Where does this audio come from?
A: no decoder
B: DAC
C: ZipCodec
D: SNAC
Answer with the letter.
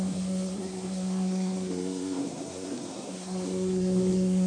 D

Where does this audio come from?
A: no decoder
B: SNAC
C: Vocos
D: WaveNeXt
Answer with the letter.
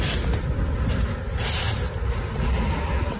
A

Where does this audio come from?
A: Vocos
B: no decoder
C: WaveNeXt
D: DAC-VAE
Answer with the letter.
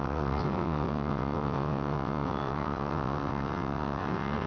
C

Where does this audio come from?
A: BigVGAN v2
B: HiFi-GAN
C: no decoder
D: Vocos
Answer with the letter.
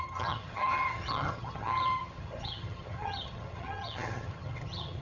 B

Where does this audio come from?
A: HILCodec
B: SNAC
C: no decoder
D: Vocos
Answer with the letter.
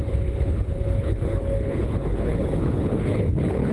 A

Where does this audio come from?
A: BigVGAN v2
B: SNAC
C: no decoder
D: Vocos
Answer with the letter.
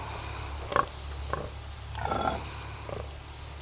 C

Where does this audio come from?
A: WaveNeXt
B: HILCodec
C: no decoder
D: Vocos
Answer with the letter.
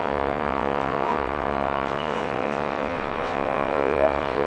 A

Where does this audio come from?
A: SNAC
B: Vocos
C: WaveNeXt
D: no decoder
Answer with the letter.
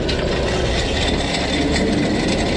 D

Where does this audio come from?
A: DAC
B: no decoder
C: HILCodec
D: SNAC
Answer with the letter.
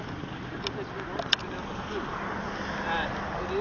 B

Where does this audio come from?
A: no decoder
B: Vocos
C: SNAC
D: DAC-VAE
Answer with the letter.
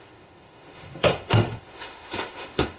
D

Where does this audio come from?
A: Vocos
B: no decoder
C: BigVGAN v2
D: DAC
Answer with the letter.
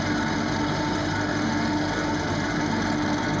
B